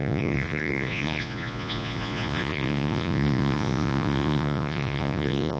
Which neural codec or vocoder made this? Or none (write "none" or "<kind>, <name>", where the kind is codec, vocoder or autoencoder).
vocoder, Vocos